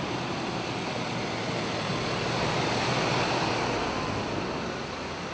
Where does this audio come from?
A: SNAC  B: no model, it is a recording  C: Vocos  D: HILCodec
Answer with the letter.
B